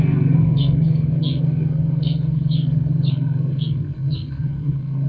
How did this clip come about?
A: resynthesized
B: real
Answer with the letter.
A